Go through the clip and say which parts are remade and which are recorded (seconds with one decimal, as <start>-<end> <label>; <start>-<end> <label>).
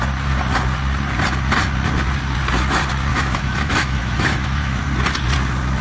0.0-3.1 recorded; 3.1-4.8 remade; 4.8-5.8 recorded